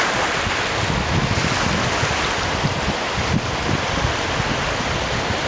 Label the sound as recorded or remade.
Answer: recorded